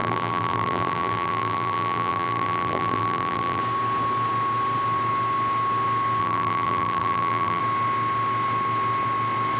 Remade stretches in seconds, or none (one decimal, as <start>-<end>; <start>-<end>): 0.0-3.6; 6.2-7.6

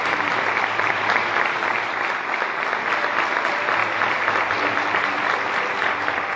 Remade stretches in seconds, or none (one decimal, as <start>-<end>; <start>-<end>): 0.0-3.8; 4.5-6.4

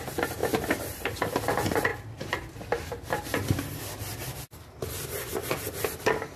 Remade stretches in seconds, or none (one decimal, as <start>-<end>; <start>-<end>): none

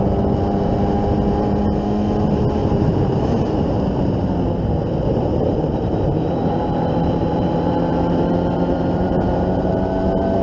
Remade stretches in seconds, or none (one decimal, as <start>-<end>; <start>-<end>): 2.6-3.8; 5.3-9.7

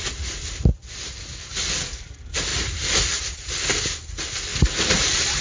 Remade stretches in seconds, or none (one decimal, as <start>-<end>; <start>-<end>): 2.5-3.3; 4.5-5.4

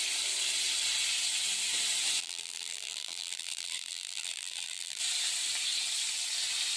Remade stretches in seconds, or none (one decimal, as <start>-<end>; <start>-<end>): 2.2-5.0

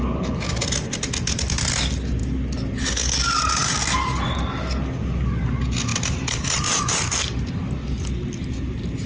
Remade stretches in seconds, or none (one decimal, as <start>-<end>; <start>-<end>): 3.6-4.3

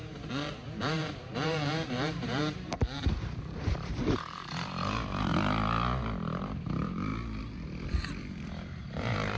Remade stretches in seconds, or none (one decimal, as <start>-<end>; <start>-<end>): 0.0-5.3; 6.4-7.1; 8.8-9.4